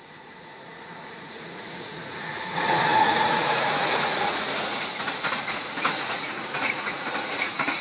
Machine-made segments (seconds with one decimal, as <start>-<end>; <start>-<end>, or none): 0.0-7.8